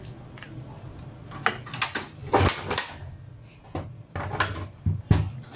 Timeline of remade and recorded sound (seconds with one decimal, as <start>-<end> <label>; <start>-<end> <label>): 0.0-5.6 recorded